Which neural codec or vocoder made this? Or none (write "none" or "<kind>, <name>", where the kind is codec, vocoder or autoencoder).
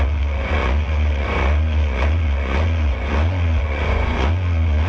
vocoder, Vocos